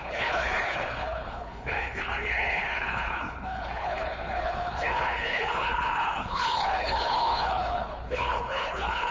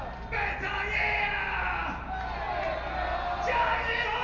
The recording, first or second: second